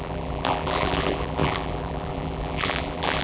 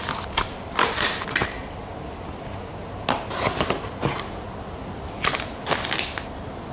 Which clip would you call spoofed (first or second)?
first